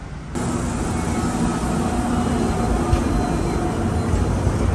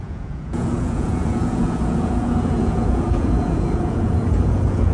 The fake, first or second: second